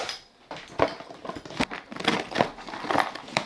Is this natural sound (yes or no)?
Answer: yes